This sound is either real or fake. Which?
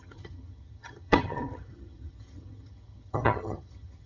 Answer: fake